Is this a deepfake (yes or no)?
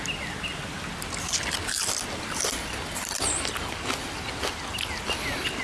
no